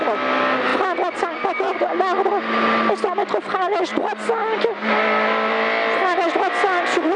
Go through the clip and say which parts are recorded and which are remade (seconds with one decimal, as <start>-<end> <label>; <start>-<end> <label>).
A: 0.0-7.2 recorded